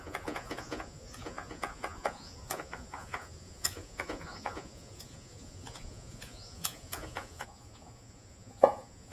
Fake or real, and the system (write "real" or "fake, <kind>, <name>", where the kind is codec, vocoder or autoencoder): fake, vocoder, Vocos